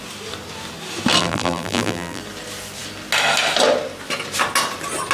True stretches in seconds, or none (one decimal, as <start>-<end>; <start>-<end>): 0.0-1.2; 2.2-5.1